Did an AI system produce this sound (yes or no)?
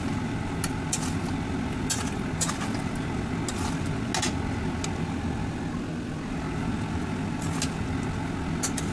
no